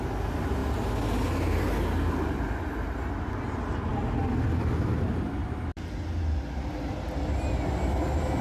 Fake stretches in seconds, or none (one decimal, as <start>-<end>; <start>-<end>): none